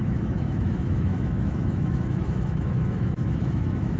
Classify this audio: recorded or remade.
remade